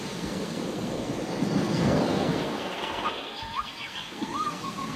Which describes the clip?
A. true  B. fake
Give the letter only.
B